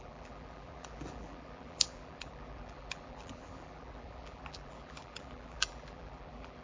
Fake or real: fake